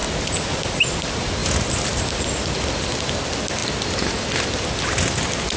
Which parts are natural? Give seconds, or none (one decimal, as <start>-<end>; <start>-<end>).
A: 0.0-5.6